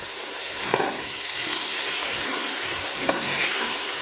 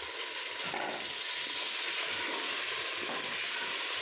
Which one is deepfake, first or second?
first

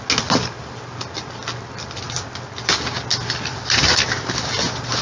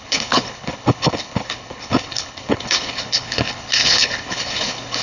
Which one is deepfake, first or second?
second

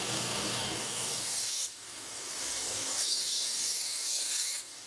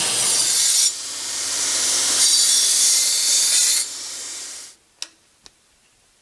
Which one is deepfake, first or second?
first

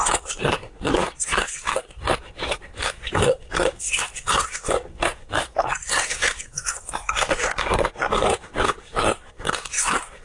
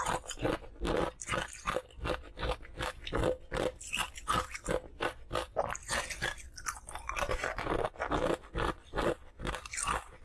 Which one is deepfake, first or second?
first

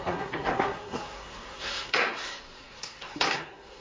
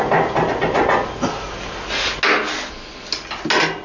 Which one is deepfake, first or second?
first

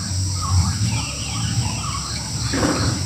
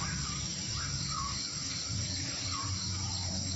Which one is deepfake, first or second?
first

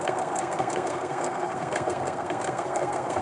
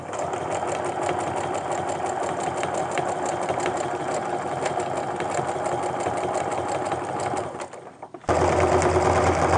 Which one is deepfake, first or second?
first